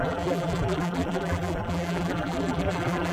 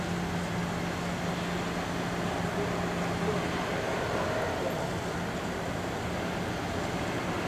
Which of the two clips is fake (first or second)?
first